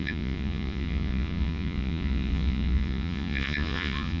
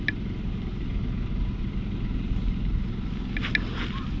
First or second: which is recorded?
second